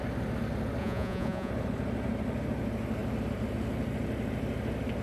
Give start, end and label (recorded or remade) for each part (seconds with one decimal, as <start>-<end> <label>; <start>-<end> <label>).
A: 0.0-0.8 recorded; 0.8-1.5 remade; 1.5-5.0 recorded